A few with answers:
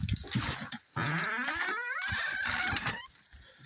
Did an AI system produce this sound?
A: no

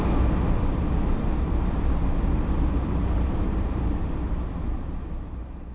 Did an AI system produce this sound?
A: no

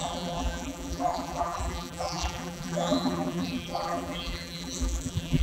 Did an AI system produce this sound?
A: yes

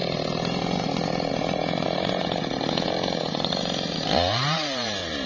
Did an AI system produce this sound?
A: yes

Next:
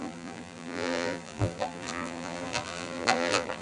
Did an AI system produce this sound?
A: yes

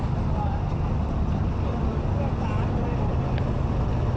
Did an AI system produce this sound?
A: no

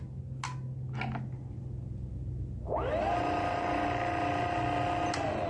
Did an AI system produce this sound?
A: no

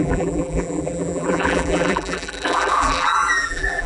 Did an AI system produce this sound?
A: yes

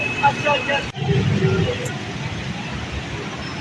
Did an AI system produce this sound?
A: no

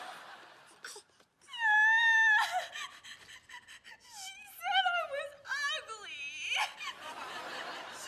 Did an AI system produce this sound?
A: no